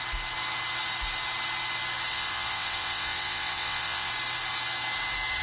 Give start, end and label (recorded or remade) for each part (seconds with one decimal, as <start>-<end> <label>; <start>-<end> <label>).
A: 0.0-2.1 recorded; 2.1-4.1 remade; 4.1-5.4 recorded